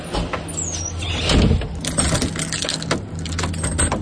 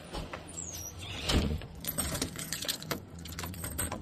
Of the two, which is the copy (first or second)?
second